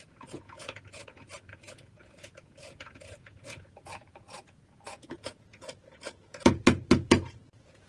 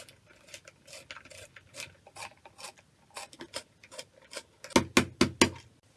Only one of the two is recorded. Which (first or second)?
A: second